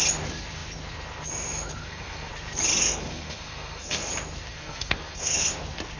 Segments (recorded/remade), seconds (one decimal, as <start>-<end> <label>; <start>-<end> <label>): 0.0-1.8 recorded; 1.8-2.3 remade; 2.3-2.8 recorded; 2.8-4.1 remade; 4.1-4.5 recorded; 4.5-5.4 remade; 5.4-6.0 recorded